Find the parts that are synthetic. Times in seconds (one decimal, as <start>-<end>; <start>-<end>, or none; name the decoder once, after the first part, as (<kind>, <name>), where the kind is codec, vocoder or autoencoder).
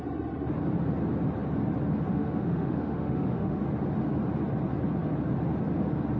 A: 2.1-3.6 (autoencoder, DAC-VAE)